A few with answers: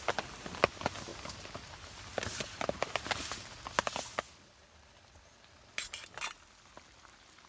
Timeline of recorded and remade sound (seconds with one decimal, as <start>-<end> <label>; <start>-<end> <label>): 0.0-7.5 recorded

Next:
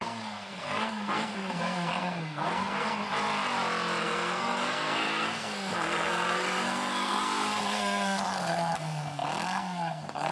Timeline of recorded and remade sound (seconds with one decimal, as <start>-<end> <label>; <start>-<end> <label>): 0.0-3.0 remade; 3.0-4.0 recorded; 4.0-10.3 remade

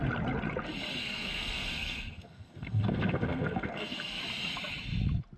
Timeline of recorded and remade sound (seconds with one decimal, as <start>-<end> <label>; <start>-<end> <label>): 0.0-1.0 recorded; 1.0-4.2 remade; 4.2-5.4 recorded

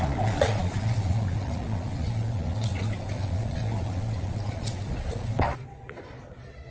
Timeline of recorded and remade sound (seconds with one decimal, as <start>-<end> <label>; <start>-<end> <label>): 0.0-6.7 remade

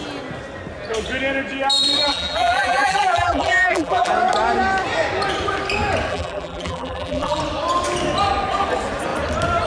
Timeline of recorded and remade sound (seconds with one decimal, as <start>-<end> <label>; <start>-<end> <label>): 0.0-2.0 recorded; 2.0-4.1 remade; 4.1-6.1 recorded; 6.1-7.4 remade; 7.4-9.7 recorded